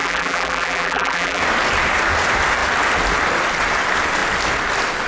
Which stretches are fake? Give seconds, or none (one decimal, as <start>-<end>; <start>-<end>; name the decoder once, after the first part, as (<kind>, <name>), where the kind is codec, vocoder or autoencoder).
0.0-1.4 (vocoder, BigVGAN v2)